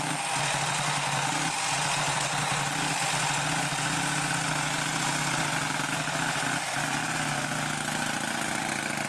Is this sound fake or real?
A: real